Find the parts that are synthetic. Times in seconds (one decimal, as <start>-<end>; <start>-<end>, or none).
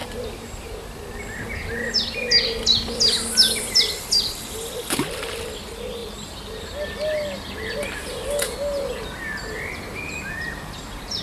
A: 0.0-0.7; 6.0-6.6